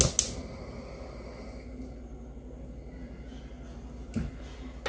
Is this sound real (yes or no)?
yes